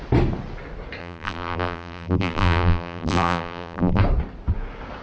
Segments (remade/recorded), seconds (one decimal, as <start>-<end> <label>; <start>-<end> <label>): 0.0-1.0 recorded; 1.0-4.0 remade; 4.0-5.0 recorded